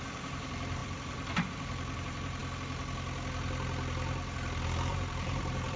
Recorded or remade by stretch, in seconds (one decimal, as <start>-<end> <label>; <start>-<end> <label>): 0.0-2.4 remade; 2.4-4.9 recorded; 4.9-5.8 remade